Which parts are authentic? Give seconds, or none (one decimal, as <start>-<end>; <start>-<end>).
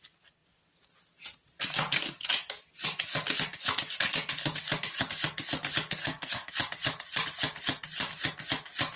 0.0-6.0; 6.5-9.0